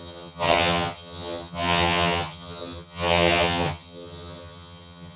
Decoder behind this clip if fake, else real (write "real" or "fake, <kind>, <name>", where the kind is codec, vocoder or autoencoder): fake, vocoder, HiFi-GAN